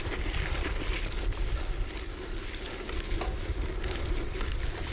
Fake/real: real